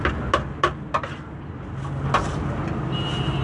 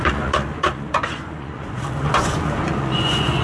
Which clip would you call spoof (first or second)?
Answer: second